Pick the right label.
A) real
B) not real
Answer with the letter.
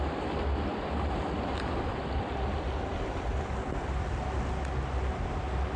A